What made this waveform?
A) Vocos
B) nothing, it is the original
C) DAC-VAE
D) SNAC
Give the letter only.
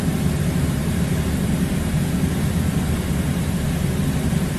B